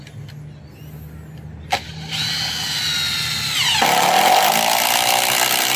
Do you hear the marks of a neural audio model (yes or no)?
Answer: no